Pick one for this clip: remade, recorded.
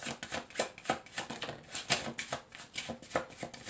recorded